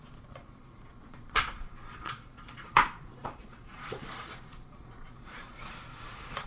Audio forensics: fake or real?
fake